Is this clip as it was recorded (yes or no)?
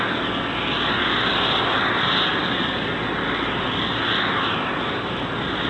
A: yes